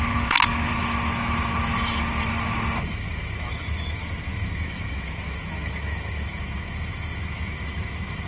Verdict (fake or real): fake